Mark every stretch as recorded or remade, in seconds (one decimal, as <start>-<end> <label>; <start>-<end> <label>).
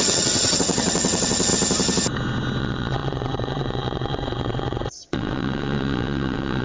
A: 0.0-1.5 remade; 1.5-2.6 recorded; 2.6-6.6 remade